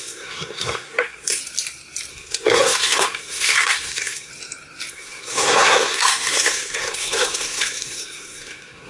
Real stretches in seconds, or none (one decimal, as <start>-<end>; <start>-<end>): 1.4-2.1; 4.3-4.9